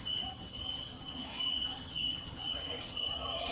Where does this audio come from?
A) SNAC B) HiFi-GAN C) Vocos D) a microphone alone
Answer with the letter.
B